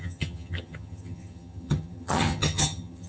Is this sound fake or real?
fake